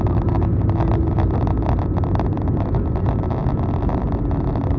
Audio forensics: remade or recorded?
recorded